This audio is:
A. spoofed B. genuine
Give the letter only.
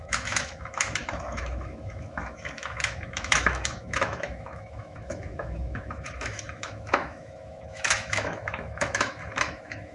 A